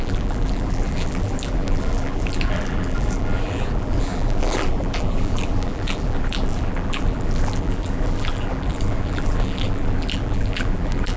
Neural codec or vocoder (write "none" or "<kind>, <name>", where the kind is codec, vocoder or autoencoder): vocoder, BigVGAN v2